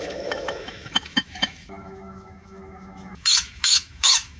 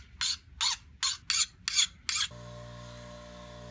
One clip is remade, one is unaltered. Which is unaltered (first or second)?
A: second